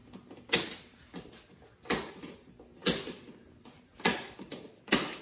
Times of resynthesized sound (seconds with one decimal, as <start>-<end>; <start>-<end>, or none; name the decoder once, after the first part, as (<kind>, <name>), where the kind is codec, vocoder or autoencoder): 2.1-5.2 (vocoder, BigVGAN v2)

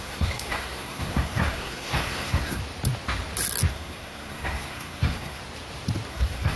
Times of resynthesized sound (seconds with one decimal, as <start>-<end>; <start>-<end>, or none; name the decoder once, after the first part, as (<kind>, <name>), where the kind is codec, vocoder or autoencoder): 0.0-2.6 (codec, SNAC); 3.7-5.4; 6.1-6.6

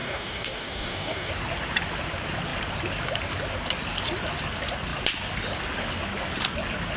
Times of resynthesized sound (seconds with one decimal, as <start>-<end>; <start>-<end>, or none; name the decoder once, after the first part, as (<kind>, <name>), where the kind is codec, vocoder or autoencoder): 0.0-1.3 (codec, DAC)

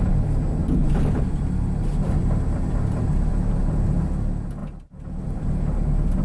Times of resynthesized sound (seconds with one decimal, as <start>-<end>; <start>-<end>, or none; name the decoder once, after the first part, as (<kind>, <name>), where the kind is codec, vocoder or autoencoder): none

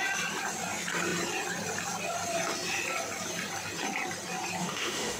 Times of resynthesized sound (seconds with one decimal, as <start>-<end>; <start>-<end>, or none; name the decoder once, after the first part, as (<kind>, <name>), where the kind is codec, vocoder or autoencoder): 4.6-5.2 (autoencoder, DAC-VAE)